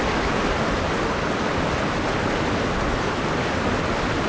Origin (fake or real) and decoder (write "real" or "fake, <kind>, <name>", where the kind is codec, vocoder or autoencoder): real